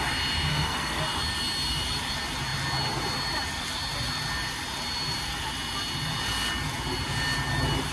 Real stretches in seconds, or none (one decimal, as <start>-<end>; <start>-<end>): 0.0-0.5; 1.0-7.9